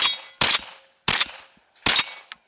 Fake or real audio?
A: real